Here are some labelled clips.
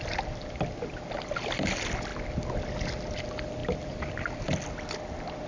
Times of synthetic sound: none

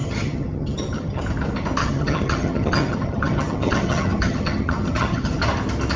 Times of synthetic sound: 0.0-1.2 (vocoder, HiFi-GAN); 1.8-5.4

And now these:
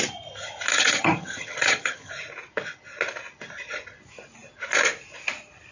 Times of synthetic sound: 0.7-2.1 (vocoder, HiFi-GAN)